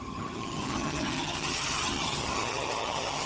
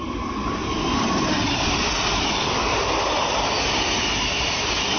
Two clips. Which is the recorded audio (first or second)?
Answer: second